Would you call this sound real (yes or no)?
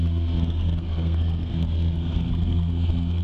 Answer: no